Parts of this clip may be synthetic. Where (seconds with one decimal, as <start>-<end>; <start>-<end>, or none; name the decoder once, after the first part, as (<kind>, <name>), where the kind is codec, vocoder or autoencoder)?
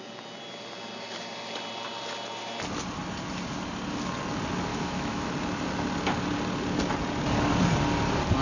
4.7-5.3 (autoencoder, DAC-VAE)